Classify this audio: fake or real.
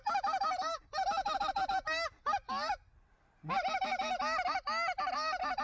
real